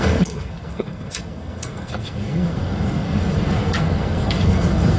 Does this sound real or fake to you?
fake